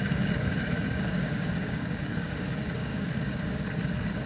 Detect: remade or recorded remade